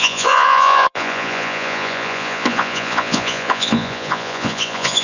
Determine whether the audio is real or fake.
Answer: fake